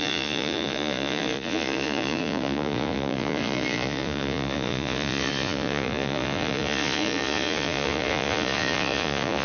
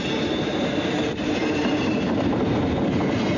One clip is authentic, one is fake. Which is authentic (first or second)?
second